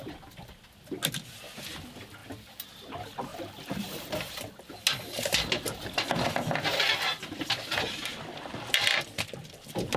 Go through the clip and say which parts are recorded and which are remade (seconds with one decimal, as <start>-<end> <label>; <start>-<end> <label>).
0.0-2.2 recorded; 2.2-2.9 remade; 2.9-3.3 recorded; 3.3-4.5 remade; 4.5-10.0 recorded